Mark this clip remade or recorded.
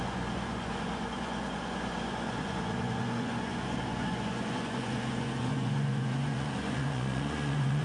remade